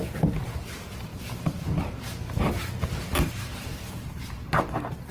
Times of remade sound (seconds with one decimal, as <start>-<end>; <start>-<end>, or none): 0.0-5.1